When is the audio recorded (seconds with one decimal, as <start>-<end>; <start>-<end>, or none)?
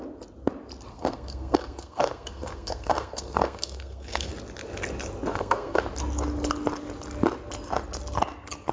0.0-0.9; 4.3-5.3; 5.8-8.7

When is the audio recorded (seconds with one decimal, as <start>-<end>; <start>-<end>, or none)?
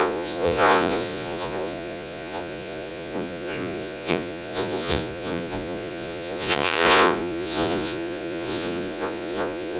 none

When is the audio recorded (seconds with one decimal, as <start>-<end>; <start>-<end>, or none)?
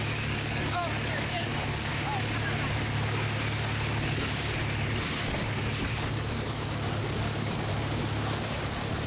1.9-6.1; 7.7-8.6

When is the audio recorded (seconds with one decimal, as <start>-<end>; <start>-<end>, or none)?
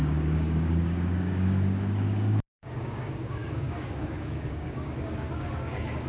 none